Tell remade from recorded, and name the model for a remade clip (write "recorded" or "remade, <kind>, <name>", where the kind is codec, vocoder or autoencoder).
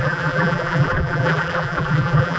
remade, vocoder, BigVGAN v2